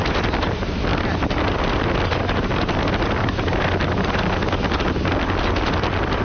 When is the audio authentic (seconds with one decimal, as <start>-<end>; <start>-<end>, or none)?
0.0-6.2